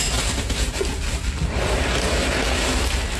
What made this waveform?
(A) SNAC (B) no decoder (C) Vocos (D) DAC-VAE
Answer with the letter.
B